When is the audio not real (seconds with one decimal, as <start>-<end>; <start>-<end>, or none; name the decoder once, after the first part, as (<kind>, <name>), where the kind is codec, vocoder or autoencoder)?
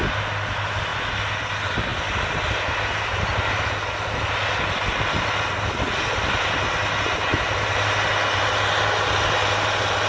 none